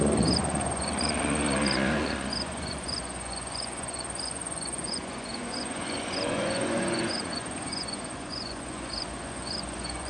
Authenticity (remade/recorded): remade